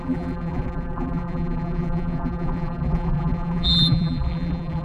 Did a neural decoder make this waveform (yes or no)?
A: yes